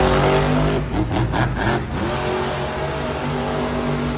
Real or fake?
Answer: real